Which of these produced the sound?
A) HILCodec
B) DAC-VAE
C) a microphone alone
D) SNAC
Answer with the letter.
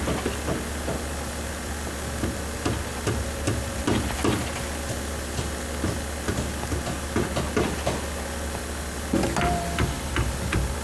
C